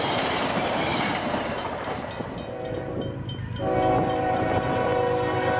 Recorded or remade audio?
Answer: remade